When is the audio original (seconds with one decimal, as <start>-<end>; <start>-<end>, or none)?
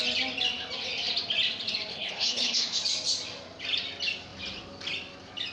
0.0-1.9; 2.8-5.5